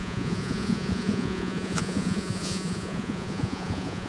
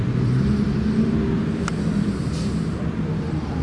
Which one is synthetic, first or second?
first